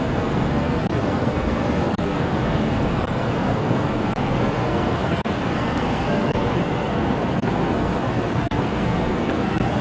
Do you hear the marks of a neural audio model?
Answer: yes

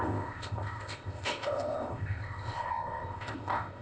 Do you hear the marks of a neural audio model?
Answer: yes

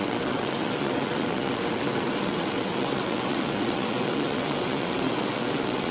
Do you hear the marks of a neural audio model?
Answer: yes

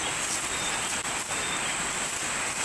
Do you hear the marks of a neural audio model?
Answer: no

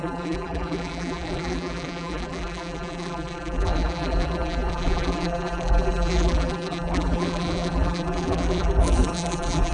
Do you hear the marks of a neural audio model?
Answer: yes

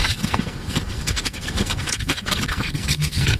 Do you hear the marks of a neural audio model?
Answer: yes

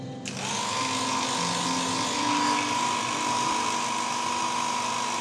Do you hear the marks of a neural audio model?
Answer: no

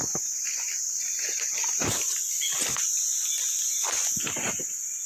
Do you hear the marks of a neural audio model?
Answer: no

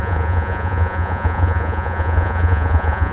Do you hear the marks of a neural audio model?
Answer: yes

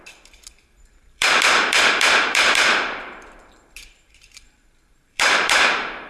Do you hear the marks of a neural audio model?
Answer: yes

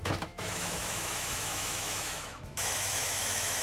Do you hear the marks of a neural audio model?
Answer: yes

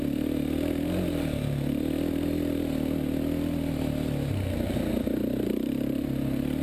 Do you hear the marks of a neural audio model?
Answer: no